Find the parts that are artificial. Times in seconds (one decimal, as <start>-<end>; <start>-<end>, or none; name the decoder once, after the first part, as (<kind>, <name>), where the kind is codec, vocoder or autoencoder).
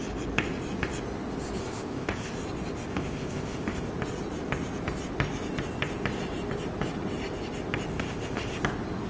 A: 1.6-2.3 (codec, ZipCodec); 2.9-3.9; 7.9-8.6